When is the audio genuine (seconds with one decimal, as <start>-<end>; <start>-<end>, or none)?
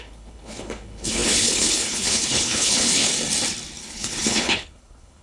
3.1-3.8